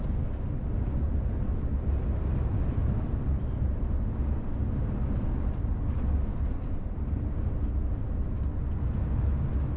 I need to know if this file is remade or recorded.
recorded